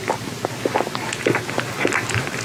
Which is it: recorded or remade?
recorded